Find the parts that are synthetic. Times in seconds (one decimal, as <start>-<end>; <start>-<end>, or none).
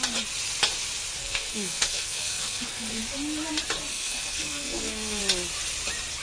1.2-3.0; 3.9-5.2